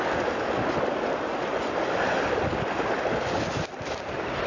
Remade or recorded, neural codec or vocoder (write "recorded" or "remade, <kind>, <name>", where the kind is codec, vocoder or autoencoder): recorded